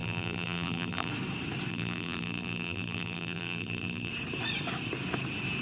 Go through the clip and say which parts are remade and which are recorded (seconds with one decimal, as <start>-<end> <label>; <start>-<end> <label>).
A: 0.0-1.1 remade; 1.1-1.7 recorded; 1.7-4.1 remade; 4.1-5.6 recorded